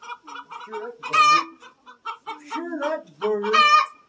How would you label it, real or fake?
real